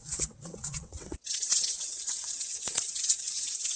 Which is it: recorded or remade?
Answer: remade